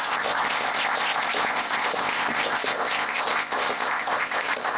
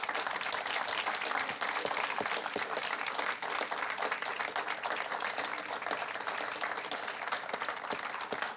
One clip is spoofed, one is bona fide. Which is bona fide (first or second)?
second